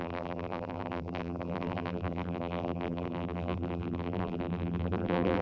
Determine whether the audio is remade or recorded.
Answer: remade